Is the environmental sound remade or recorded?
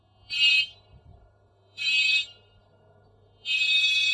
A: remade